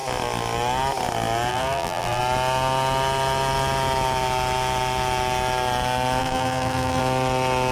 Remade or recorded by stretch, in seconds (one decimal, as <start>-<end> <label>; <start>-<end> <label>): 0.0-1.5 recorded; 1.5-2.2 remade; 2.2-6.2 recorded; 6.2-7.0 remade; 7.0-7.7 recorded